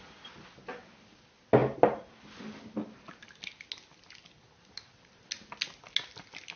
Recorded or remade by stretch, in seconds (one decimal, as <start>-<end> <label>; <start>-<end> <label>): 0.0-6.6 recorded